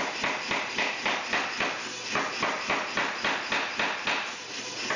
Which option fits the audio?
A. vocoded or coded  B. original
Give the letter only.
B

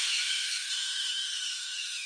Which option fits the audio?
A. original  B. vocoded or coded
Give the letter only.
B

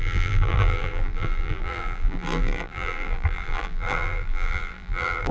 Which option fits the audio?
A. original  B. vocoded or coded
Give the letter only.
B